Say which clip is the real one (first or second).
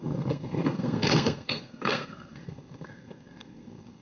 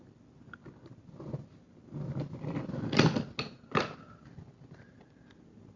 second